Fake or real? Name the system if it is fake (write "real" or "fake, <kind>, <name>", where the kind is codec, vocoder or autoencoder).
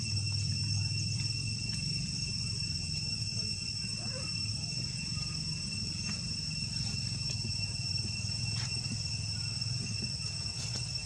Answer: fake, vocoder, BigVGAN v2